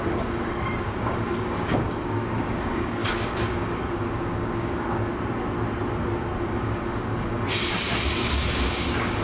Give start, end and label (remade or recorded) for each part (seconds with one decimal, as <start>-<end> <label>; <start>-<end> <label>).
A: 0.0-5.1 remade; 5.1-6.4 recorded; 6.4-7.5 remade; 7.5-8.2 recorded; 8.2-9.2 remade